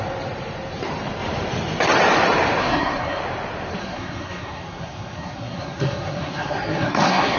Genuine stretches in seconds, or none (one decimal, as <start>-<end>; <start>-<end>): 0.0-2.6; 3.2-3.8